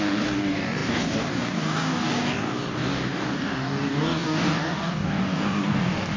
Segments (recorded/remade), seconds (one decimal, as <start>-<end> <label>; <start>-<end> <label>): 0.0-6.2 remade